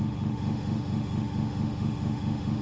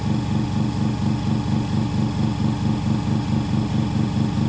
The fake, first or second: first